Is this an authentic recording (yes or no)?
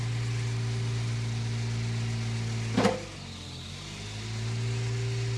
yes